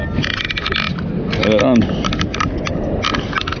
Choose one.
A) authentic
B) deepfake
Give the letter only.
A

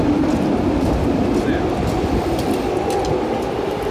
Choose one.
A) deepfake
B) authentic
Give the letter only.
B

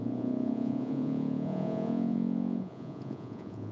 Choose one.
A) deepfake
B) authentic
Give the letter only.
A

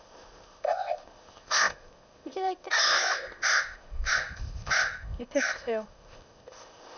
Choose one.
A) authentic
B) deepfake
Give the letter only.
B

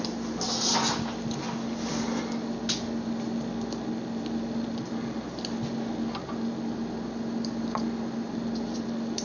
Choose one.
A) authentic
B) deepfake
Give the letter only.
A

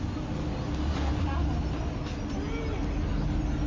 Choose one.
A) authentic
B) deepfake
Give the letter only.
A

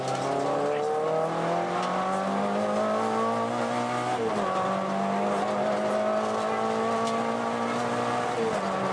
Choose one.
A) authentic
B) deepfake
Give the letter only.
A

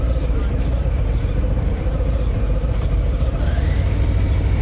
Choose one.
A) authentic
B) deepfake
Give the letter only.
B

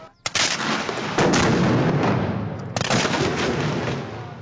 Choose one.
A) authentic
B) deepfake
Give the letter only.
A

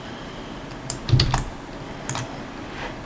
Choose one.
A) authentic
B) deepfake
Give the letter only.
B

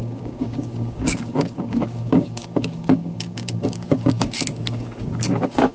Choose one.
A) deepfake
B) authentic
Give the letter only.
A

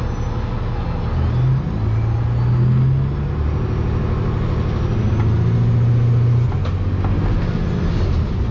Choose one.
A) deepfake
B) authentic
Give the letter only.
B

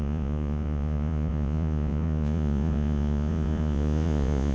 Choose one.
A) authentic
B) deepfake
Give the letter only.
B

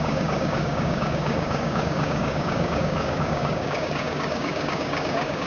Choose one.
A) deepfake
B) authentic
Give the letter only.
A